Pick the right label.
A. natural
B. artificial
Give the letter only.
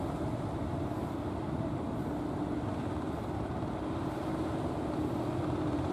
A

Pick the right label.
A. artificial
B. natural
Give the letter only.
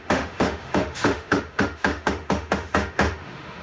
A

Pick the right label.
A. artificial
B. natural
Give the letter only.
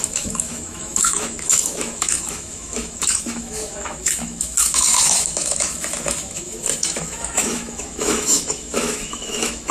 A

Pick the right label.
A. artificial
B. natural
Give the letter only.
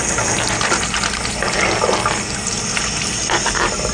B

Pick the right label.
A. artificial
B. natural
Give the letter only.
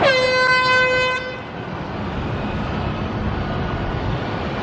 B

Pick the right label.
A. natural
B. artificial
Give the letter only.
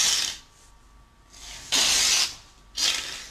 A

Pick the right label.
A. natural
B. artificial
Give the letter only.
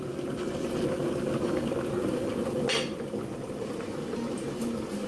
A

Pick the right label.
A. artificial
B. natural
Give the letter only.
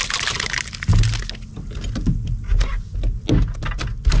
B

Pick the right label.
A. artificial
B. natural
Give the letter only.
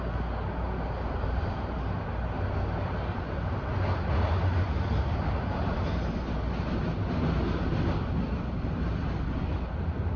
B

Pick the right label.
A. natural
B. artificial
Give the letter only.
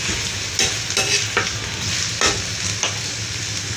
A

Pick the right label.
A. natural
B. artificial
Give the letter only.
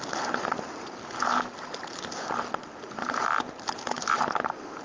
A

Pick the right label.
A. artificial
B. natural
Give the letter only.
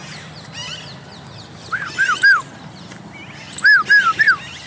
B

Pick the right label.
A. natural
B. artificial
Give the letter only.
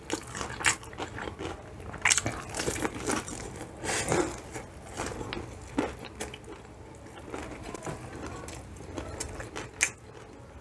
A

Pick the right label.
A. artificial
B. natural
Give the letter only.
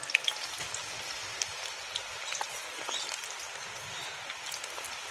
B